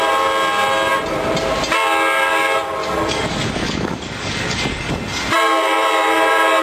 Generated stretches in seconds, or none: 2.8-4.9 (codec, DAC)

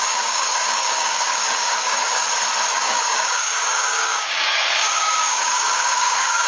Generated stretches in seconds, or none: 0.0-2.2 (codec, DAC); 2.7-6.5